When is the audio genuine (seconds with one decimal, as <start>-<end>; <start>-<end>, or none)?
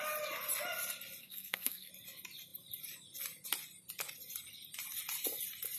0.0-1.2; 1.9-5.8